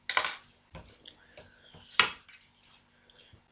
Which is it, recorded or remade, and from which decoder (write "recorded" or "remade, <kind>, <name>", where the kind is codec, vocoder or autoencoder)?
recorded